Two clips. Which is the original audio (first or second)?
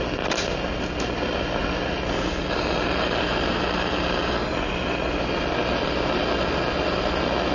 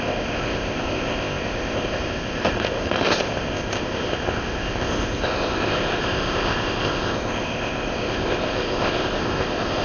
first